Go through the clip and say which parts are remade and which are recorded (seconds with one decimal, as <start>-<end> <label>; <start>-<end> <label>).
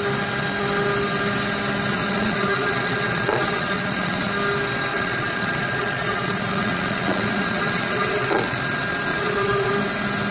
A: 0.0-1.9 recorded; 1.9-4.3 remade; 4.3-4.9 recorded; 4.9-8.6 remade; 8.6-9.1 recorded; 9.1-9.7 remade; 9.7-10.3 recorded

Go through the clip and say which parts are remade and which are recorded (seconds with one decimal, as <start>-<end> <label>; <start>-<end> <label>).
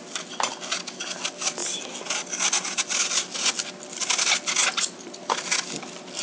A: 0.0-6.2 recorded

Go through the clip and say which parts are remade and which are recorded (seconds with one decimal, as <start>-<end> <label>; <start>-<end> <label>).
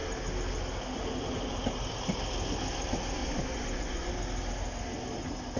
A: 0.0-3.2 recorded; 3.2-4.1 remade; 4.1-5.6 recorded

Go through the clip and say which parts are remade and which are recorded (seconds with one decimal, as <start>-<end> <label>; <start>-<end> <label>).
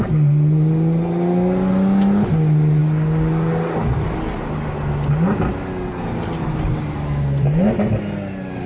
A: 0.0-8.7 recorded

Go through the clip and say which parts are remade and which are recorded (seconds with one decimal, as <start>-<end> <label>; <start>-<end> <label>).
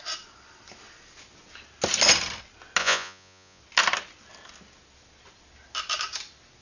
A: 0.0-2.8 recorded; 2.8-3.6 remade; 3.6-6.6 recorded